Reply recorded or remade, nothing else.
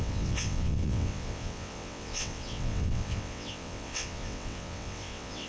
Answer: remade